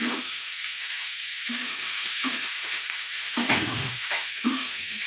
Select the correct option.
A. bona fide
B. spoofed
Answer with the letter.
B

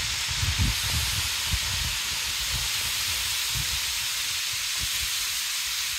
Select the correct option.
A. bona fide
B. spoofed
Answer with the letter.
A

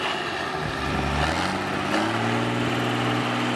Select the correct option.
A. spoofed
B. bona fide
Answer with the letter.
B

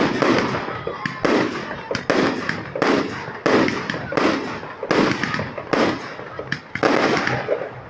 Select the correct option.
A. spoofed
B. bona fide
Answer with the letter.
B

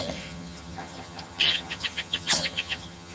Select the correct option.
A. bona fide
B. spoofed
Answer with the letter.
B